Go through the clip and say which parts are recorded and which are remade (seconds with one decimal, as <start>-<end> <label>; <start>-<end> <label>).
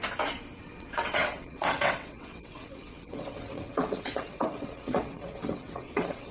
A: 0.0-0.6 recorded; 0.6-6.3 remade